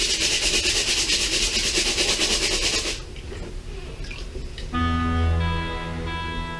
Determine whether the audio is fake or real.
real